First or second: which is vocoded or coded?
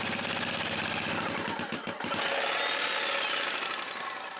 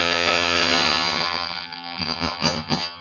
second